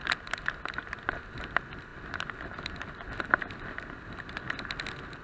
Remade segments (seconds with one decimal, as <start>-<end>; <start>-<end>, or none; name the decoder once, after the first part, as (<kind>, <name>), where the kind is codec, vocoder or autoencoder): none